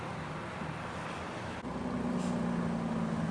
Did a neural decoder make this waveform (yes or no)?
no